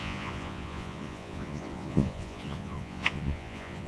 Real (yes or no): no